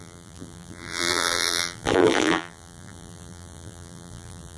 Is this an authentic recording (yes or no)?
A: no